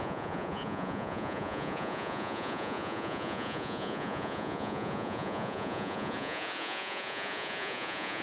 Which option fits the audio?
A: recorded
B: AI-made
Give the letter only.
B